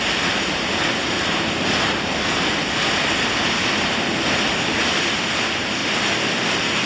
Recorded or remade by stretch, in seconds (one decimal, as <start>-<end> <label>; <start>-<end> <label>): 0.0-6.9 recorded